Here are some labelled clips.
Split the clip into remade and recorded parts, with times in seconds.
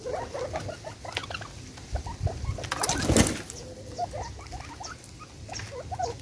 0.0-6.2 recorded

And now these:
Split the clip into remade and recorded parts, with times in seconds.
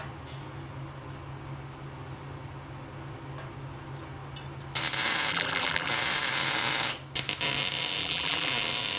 0.0-5.3 recorded; 5.3-5.9 remade; 5.9-8.0 recorded; 8.0-8.5 remade; 8.5-9.0 recorded